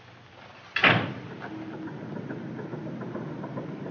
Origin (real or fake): real